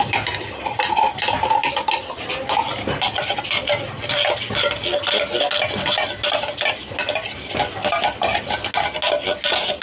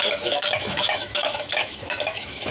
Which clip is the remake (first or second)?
second